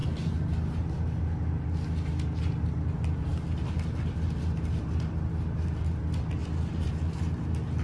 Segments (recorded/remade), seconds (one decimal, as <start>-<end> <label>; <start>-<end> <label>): 0.0-7.8 recorded